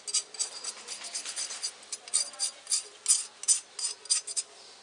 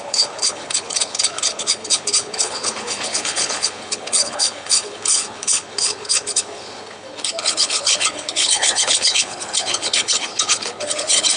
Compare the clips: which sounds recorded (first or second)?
first